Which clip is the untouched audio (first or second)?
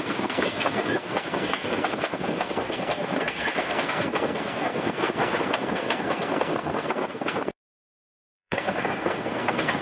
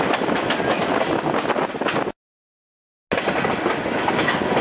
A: second